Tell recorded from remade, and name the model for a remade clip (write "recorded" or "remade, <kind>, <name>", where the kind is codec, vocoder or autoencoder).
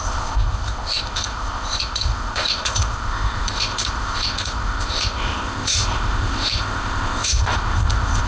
remade, codec, ZipCodec